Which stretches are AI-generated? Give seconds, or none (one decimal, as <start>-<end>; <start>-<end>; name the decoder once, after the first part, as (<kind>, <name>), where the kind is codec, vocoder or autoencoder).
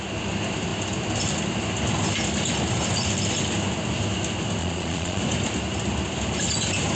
4.6-5.2 (vocoder, Vocos)